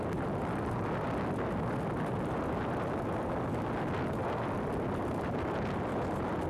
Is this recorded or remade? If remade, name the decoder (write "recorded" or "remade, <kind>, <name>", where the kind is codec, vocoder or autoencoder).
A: recorded